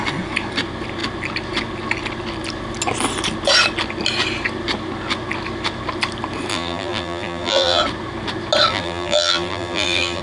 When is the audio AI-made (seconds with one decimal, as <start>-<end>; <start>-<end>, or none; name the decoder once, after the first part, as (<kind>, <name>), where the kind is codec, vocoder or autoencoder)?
6.5-7.8 (vocoder, BigVGAN v2); 8.7-10.2